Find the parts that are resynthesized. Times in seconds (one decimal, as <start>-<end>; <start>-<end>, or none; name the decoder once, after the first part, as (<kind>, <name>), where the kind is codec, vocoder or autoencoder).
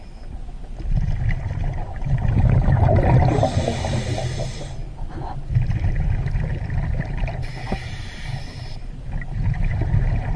1.8-3.4 (vocoder, BigVGAN v2)